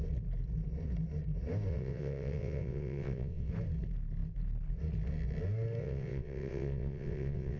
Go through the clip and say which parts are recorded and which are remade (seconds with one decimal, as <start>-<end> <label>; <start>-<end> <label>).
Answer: 0.0-1.7 recorded; 1.7-3.5 remade; 3.5-5.8 recorded; 5.8-7.6 remade

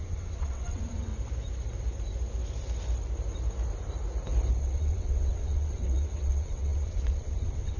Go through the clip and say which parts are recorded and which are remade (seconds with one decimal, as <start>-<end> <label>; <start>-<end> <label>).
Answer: 0.0-1.1 remade; 1.1-4.6 recorded; 4.6-7.8 remade

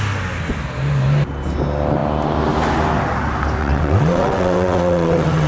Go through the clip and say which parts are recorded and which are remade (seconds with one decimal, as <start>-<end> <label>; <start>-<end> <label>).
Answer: 0.0-3.6 recorded; 3.6-5.5 remade

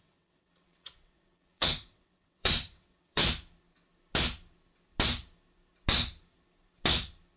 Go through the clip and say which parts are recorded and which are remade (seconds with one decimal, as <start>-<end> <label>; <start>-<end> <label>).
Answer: 0.0-3.2 remade; 3.2-7.4 recorded